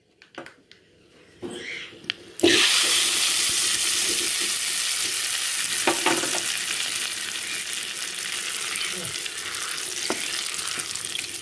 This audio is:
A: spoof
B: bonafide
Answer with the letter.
B